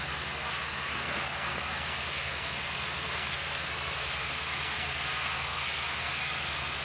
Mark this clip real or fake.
fake